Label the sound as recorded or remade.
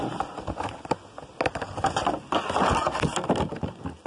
recorded